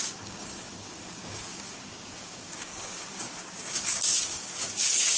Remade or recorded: remade